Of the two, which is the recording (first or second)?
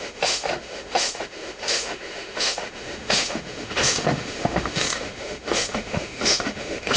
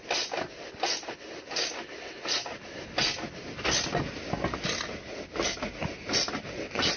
second